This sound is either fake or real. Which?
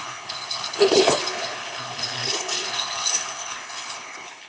fake